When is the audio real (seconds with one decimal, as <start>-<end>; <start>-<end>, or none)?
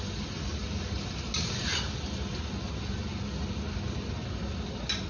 0.0-5.1